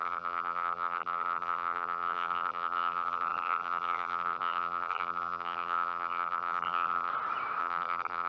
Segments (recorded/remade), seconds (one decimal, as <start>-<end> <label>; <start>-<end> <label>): 0.0-7.1 remade; 7.1-7.6 recorded; 7.6-8.3 remade